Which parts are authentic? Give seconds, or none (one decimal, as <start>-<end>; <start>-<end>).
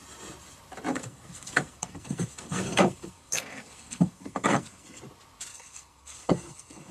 0.0-0.9; 5.0-5.5